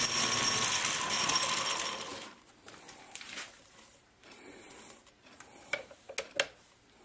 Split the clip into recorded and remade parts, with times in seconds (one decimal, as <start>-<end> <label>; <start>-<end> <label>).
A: 0.0-2.1 recorded; 2.1-6.0 remade; 6.0-7.0 recorded